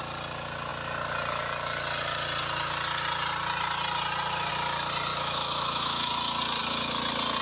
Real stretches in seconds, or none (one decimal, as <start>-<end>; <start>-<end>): 0.0-5.1; 6.1-7.4